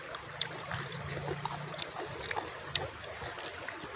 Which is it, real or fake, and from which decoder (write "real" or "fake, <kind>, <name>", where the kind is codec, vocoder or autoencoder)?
real